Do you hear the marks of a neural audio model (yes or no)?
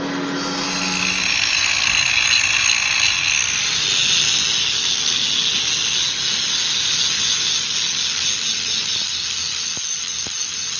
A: no